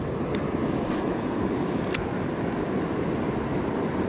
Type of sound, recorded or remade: recorded